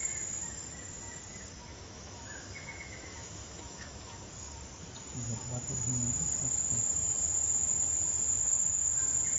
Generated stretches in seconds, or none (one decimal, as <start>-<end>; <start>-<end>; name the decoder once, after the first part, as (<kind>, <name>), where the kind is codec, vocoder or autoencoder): 1.7-4.3 (autoencoder, DAC-VAE); 8.4-9.0